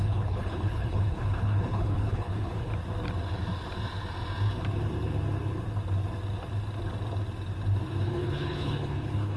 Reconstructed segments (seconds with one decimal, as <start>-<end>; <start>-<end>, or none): 0.0-2.7; 8.0-9.4